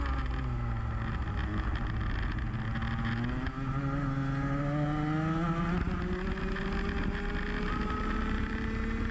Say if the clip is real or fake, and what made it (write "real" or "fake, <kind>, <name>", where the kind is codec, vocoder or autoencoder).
real